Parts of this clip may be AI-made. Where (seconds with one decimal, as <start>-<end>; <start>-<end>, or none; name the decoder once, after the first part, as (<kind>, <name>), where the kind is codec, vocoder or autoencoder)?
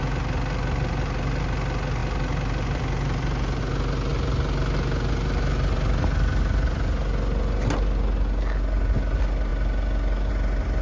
none